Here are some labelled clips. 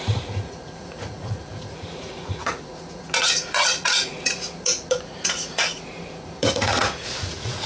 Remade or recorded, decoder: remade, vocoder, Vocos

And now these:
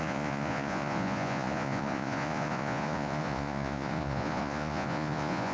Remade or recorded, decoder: remade, vocoder, Vocos